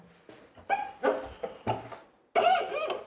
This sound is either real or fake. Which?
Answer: real